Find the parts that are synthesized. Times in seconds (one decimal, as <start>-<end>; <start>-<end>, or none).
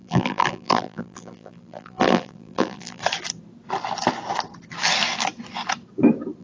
0.0-3.0